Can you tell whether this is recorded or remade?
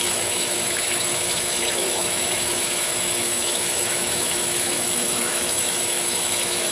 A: remade